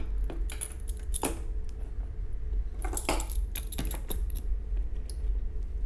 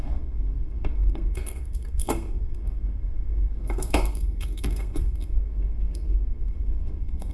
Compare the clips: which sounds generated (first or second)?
second